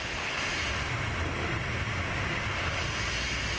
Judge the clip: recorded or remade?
recorded